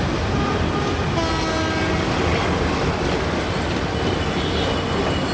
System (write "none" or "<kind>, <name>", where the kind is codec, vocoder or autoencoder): none